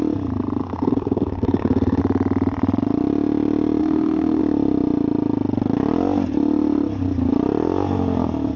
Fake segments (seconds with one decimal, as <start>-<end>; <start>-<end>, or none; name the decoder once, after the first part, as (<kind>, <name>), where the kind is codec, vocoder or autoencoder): 0.6-2.0 (codec, SNAC); 3.8-4.4